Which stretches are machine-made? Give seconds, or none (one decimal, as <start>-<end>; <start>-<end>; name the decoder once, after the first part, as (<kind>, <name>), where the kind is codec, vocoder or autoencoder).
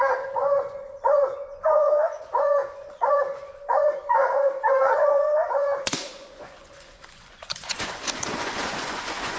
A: 0.0-9.4 (vocoder, Vocos)